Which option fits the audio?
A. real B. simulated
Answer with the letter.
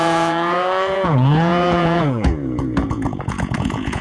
B